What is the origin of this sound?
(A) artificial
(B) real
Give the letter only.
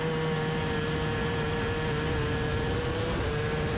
B